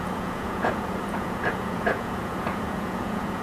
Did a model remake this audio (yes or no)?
yes